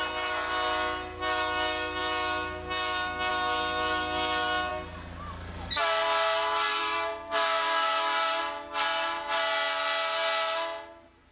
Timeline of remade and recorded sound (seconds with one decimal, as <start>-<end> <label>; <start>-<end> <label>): 0.0-6.7 recorded; 6.7-8.4 remade; 8.4-11.3 recorded